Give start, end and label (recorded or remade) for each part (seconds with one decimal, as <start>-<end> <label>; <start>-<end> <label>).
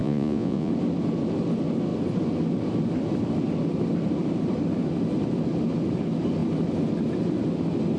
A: 0.0-0.7 remade; 0.7-8.0 recorded